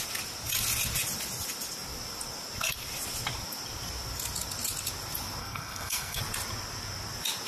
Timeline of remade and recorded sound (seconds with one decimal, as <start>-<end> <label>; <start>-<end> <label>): 0.0-5.4 recorded; 5.4-6.2 remade; 6.2-7.5 recorded